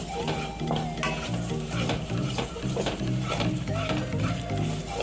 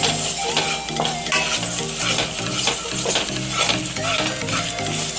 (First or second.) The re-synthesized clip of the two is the first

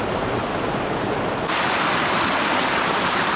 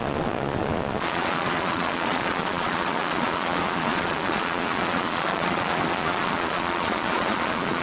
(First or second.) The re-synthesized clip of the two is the second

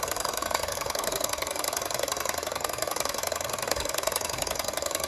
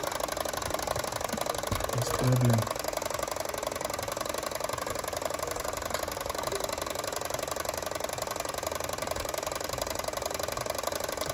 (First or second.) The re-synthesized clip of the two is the first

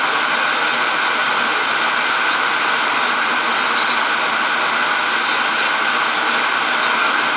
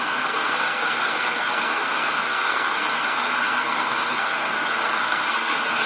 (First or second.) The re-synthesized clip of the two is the second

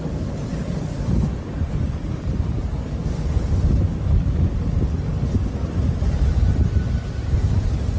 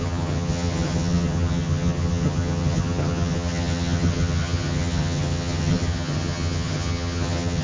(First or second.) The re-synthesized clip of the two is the second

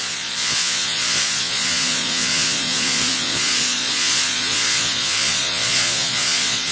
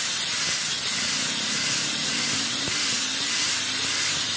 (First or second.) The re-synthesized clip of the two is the first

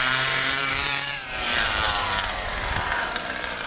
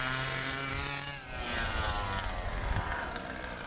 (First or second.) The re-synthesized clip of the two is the first